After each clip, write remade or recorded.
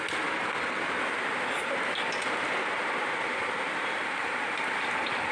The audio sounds recorded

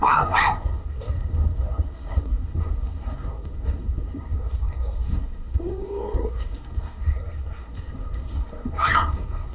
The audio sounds remade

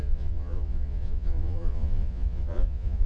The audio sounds remade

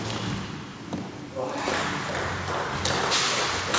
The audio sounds recorded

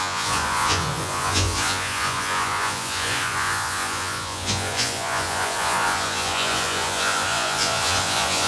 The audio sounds remade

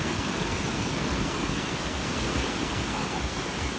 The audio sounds remade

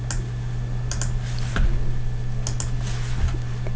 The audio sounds recorded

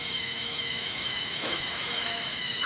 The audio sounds remade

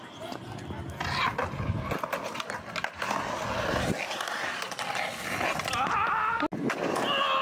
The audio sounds recorded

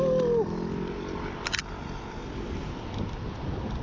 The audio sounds recorded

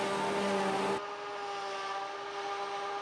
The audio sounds recorded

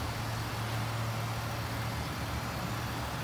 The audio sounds recorded